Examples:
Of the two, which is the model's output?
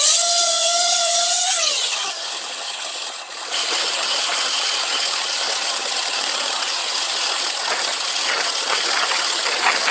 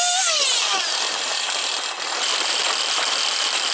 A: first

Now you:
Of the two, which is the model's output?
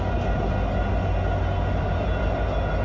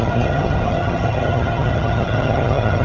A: second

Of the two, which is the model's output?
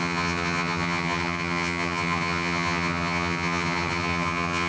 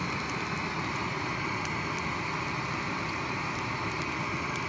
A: first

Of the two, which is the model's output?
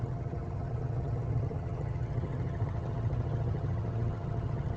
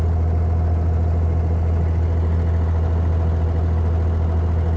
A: first